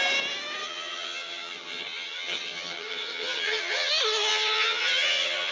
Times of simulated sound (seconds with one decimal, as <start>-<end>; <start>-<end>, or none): 0.6-3.9; 4.3-5.5